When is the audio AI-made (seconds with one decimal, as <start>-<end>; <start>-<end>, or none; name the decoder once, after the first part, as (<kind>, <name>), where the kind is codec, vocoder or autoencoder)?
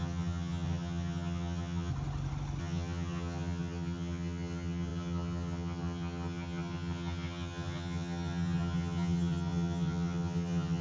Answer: 0.0-1.9 (vocoder, HiFi-GAN); 2.6-10.8